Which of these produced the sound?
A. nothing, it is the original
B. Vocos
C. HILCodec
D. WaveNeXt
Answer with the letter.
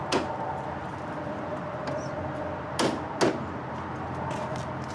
A